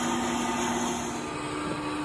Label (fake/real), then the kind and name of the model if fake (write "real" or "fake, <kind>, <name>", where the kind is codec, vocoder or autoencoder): real